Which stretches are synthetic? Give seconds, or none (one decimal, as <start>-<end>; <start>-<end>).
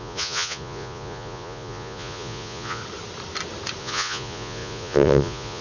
0.0-2.8; 3.8-5.6